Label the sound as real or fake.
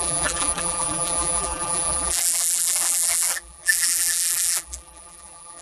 fake